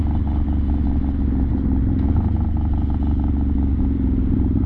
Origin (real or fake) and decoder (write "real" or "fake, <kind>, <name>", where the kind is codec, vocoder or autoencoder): real